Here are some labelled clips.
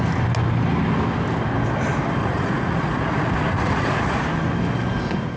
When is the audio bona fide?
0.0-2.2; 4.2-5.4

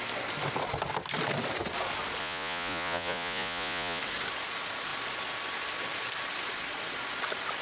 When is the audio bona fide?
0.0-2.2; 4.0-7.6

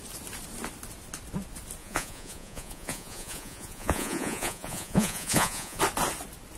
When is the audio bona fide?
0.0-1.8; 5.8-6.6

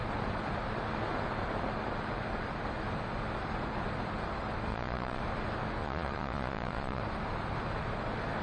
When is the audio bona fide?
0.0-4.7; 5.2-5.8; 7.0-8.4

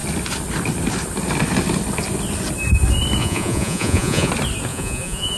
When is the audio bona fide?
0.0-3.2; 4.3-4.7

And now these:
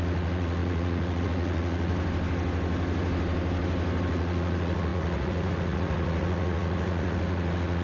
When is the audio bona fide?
1.9-4.1

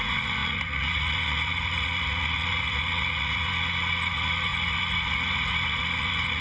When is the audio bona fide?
none

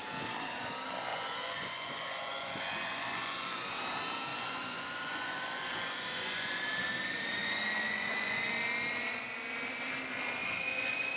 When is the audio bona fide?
0.0-1.1; 3.7-4.3; 6.6-7.4; 8.5-10.4